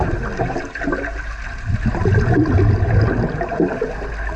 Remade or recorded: recorded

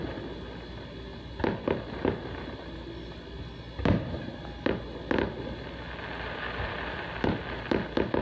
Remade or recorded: recorded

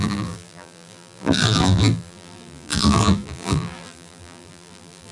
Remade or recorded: remade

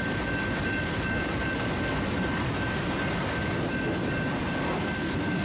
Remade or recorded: recorded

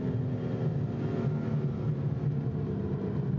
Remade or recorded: recorded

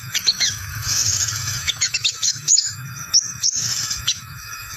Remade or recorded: remade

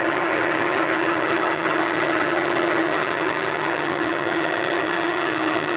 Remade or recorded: remade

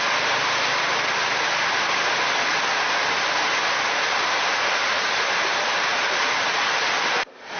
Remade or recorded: recorded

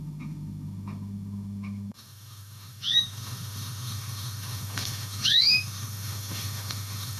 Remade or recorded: remade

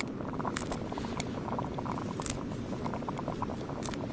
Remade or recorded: recorded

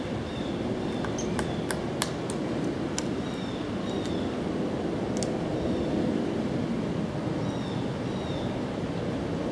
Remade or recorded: recorded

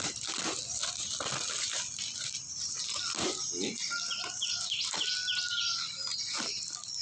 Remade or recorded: recorded